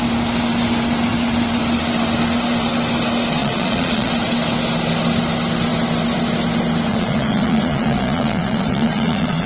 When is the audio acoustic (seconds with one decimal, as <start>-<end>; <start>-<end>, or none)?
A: 0.0-3.4; 4.1-6.9